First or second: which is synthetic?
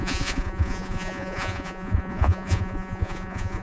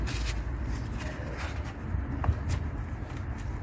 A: first